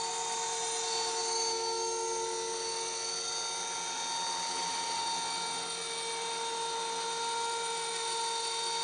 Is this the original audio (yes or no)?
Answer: yes